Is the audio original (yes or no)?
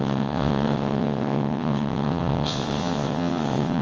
no